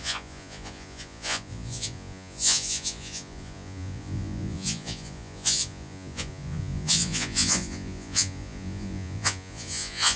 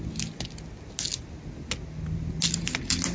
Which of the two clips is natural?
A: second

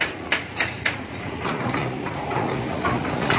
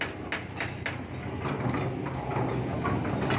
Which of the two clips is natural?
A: second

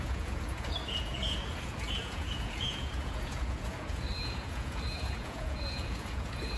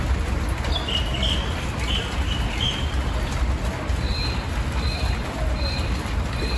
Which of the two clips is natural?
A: second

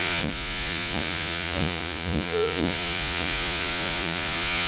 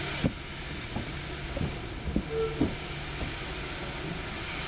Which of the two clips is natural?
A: second